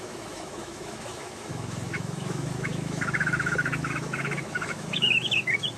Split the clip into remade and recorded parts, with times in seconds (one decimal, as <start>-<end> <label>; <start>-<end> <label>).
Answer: 0.0-5.8 remade